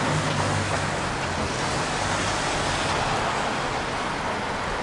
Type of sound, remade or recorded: recorded